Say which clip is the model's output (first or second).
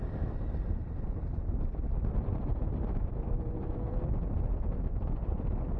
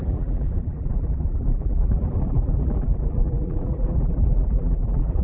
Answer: second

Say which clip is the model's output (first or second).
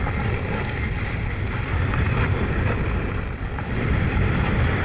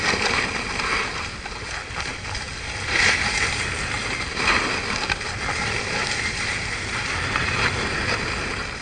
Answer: first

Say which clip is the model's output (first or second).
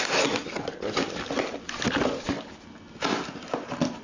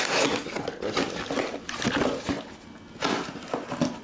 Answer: first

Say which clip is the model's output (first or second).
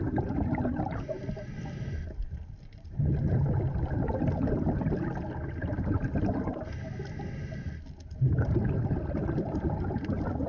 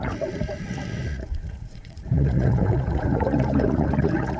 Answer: second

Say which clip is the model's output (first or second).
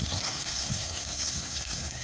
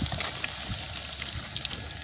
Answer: first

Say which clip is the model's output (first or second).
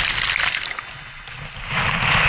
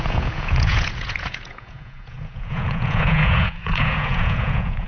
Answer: second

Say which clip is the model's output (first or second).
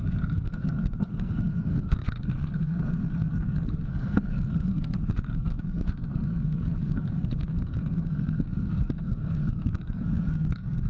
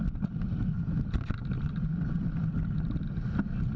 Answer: first